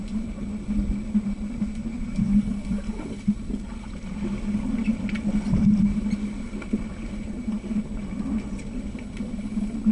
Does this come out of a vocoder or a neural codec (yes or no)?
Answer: no